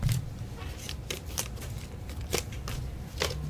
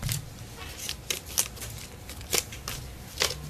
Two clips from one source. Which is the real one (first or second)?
second